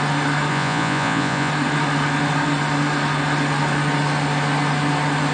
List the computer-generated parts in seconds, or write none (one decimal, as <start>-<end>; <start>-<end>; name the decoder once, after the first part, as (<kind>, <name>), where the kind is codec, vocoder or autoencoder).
0.5-1.5 (vocoder, Vocos)